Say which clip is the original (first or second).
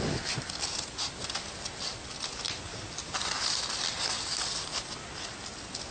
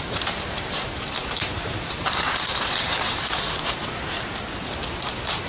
first